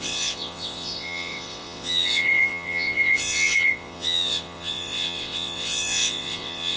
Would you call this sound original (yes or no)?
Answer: no